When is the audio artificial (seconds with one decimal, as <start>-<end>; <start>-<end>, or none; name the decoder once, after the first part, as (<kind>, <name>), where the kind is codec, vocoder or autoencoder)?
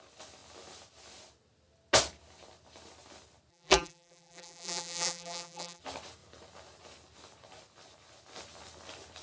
3.5-5.8 (vocoder, BigVGAN v2)